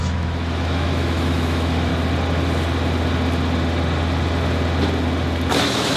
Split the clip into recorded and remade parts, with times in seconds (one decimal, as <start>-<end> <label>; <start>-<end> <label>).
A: 0.0-1.9 remade; 1.9-5.5 recorded; 5.5-6.0 remade